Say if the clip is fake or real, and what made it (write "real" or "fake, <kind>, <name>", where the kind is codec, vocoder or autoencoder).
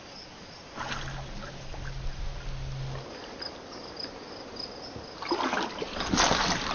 real